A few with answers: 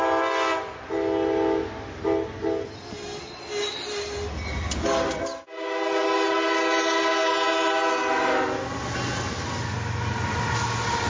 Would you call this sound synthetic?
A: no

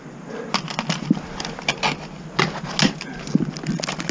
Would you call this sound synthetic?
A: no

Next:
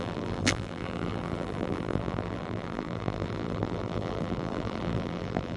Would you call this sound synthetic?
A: yes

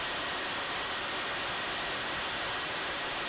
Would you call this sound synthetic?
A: yes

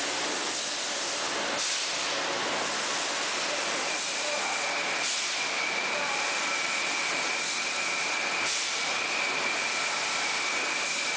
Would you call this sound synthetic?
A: no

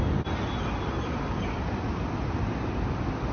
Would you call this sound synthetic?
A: no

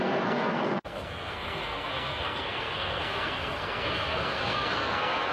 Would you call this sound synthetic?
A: yes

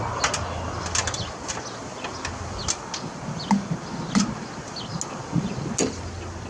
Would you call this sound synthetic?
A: no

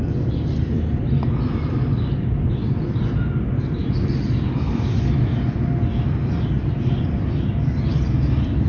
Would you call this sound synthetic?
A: no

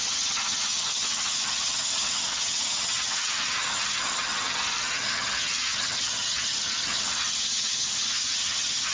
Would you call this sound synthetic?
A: yes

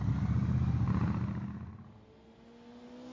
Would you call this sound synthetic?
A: no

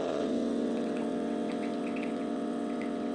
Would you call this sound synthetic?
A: yes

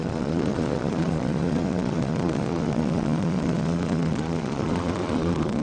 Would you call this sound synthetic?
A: yes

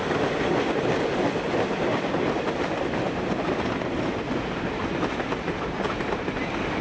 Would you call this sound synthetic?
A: no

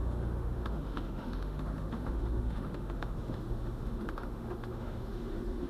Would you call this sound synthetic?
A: yes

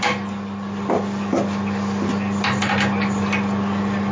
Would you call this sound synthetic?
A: no